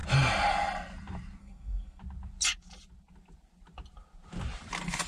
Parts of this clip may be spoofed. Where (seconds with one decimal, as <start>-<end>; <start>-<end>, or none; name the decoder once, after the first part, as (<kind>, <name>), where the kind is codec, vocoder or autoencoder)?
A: 1.4-2.0 (codec, SNAC)

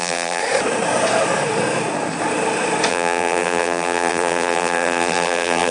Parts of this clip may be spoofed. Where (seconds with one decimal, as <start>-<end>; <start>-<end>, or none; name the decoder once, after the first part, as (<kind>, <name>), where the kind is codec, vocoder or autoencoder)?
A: 0.0-0.4 (vocoder, BigVGAN v2); 2.9-5.7

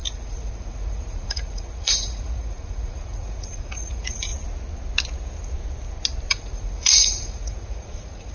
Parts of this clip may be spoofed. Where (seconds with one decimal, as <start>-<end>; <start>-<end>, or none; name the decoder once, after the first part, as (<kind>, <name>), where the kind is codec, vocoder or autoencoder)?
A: 0.0-4.3 (vocoder, Vocos); 6.3-8.3

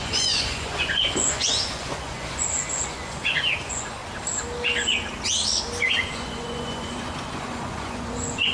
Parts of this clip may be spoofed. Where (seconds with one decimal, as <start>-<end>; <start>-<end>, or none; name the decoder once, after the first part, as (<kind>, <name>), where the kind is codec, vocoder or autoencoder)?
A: 0.0-4.0 (vocoder, Vocos); 6.0-8.5

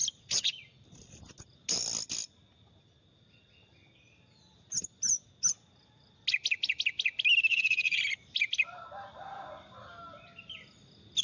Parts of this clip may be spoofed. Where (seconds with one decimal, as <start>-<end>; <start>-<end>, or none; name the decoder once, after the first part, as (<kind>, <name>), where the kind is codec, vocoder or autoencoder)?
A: 7.5-8.0 (vocoder, WaveNeXt)

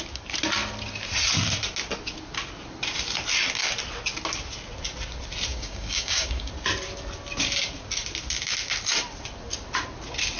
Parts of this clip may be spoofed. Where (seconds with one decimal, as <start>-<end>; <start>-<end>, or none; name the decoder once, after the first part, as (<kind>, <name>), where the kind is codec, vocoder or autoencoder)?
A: 5.5-6.5 (codec, DAC)

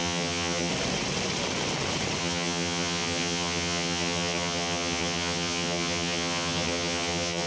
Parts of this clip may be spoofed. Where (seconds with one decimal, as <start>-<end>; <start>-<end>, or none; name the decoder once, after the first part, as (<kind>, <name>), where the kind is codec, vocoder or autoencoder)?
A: 0.0-0.7 (vocoder, HiFi-GAN); 2.2-7.5

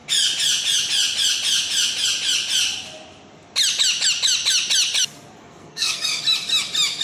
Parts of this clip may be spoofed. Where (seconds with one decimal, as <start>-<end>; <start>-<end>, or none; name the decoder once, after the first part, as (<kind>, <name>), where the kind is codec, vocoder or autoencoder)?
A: 5.4-6.2 (codec, SNAC)